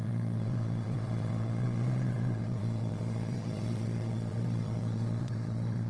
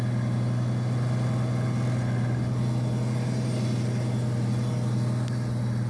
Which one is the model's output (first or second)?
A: first